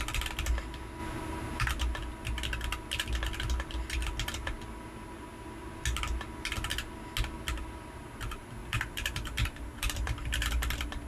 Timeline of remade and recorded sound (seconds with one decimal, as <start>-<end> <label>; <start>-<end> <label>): 0.0-8.6 recorded; 8.6-10.5 remade; 10.5-11.1 recorded